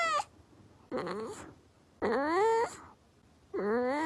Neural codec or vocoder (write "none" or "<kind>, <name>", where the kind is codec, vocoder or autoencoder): none